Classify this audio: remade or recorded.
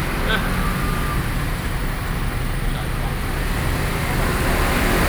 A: recorded